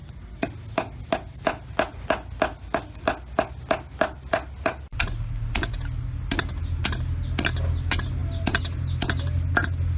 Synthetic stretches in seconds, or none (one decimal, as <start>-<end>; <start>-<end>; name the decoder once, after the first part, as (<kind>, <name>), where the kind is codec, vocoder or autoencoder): none